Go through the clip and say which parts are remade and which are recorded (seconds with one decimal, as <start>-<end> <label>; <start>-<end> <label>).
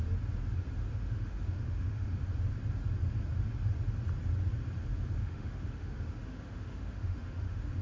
0.0-0.9 recorded; 0.9-2.2 remade; 2.2-5.2 recorded; 5.2-7.8 remade